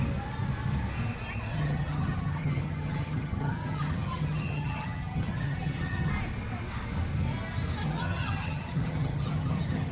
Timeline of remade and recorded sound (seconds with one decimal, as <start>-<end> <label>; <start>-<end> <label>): 0.0-1.5 recorded; 1.5-6.1 remade; 6.1-7.8 recorded; 7.8-9.9 remade